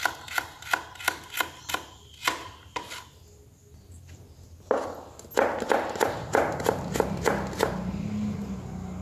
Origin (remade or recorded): recorded